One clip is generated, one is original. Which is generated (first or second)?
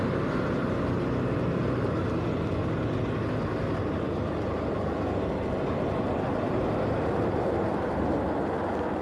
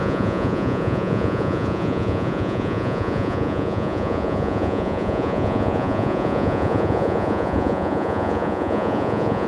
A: second